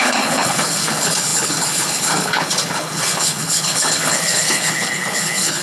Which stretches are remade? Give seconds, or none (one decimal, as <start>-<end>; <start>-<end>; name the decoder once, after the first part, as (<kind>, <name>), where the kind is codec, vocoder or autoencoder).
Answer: 0.0-5.6 (codec, HILCodec)